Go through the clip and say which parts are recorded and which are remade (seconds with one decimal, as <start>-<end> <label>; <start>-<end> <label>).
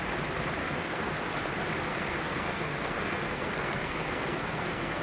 0.0-0.6 recorded; 0.6-1.1 remade; 1.1-1.9 recorded; 1.9-5.0 remade